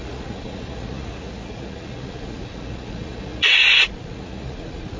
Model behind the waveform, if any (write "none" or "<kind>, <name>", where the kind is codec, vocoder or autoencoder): vocoder, Vocos